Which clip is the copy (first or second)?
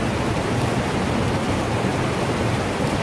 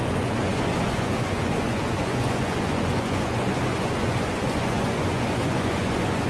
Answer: second